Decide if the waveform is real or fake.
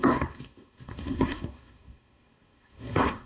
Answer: fake